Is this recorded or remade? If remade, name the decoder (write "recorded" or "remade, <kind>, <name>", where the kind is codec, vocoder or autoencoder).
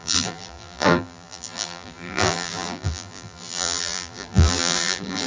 remade, vocoder, BigVGAN v2